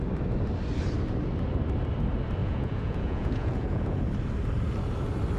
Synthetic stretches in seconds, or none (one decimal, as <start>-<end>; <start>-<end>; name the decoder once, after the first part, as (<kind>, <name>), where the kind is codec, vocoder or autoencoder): 2.4-4.0 (vocoder, Vocos)